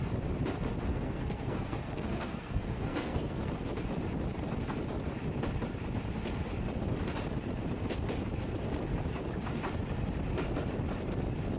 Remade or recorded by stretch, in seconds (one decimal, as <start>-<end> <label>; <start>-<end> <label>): 0.0-0.9 recorded; 0.9-3.5 remade; 3.5-11.6 recorded